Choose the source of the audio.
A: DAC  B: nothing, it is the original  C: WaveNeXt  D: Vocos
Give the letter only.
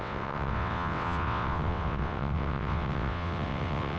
C